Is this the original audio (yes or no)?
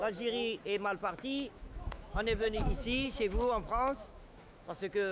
no